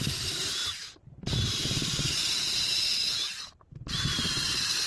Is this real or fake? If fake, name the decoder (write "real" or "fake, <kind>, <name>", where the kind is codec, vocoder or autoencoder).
fake, vocoder, BigVGAN v2